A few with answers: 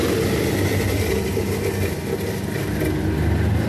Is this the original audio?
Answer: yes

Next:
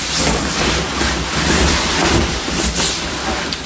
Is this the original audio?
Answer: yes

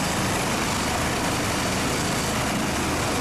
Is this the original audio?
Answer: yes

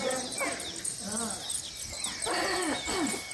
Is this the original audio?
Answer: yes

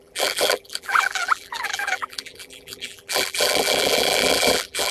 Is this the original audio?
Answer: no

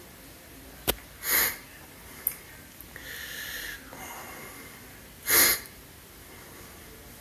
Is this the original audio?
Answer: yes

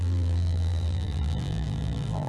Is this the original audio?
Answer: no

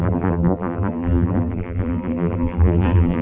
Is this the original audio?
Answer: no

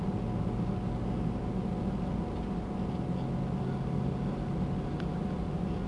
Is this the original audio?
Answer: yes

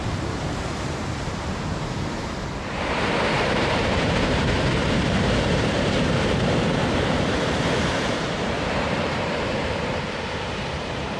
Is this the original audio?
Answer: no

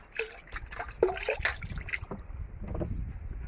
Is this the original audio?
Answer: yes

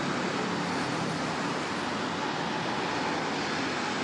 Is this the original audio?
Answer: yes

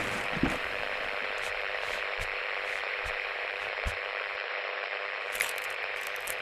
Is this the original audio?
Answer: no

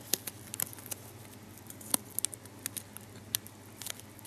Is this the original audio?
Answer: yes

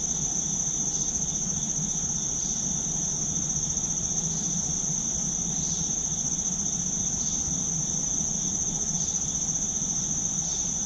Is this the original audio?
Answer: yes